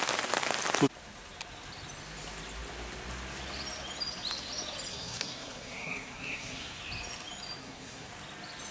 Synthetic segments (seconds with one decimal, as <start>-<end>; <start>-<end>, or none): 4.9-6.8; 7.6-8.1